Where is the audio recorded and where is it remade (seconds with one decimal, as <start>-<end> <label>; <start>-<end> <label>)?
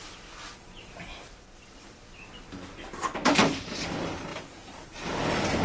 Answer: 0.0-5.6 recorded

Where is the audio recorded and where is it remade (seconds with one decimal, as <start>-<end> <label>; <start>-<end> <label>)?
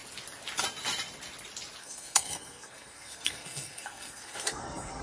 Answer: 0.0-1.8 recorded; 1.8-5.0 remade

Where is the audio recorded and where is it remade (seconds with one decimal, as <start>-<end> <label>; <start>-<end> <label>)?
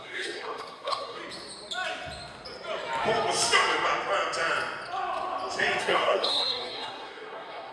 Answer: 0.0-1.2 remade; 1.2-5.8 recorded; 5.8-7.7 remade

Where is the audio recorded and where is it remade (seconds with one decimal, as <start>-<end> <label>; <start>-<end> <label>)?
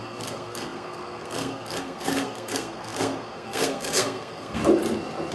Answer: 0.0-4.6 remade; 4.6-5.3 recorded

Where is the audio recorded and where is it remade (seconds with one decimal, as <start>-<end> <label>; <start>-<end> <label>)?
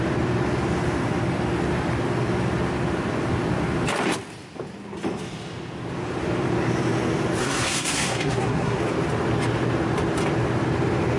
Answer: 0.0-7.4 recorded; 7.4-8.8 remade; 8.8-11.2 recorded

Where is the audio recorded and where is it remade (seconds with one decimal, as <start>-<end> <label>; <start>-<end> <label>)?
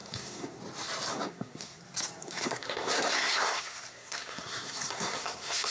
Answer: 0.0-0.6 remade; 0.6-1.1 recorded; 1.1-1.8 remade; 1.8-2.2 recorded; 2.2-5.7 remade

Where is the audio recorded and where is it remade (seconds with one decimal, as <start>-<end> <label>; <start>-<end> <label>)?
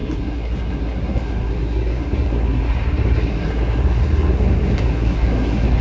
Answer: 0.0-5.8 remade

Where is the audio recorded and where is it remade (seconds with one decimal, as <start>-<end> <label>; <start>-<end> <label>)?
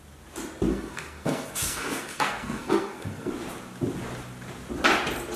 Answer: 0.0-0.7 recorded; 0.7-3.3 remade; 3.3-5.4 recorded